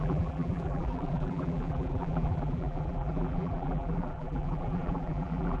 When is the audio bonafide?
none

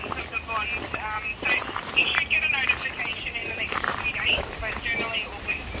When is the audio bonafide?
0.0-3.4; 4.2-5.8